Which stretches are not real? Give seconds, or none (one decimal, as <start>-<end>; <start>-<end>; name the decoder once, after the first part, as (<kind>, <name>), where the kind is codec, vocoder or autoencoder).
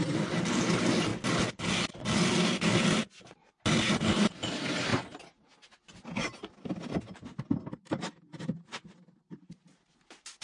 none